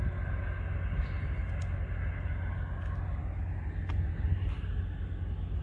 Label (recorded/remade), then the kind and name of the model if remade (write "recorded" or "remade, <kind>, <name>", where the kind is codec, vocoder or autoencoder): recorded